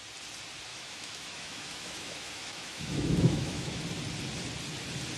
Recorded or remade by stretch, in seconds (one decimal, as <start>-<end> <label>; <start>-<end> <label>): 0.0-0.7 recorded; 0.7-3.8 remade; 3.8-5.2 recorded